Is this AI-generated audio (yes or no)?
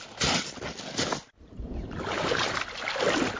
no